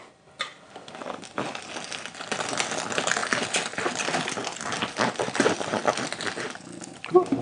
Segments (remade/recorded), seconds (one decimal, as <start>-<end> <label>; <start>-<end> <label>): 0.0-7.4 recorded